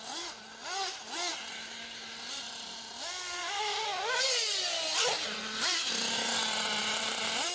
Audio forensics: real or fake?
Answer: real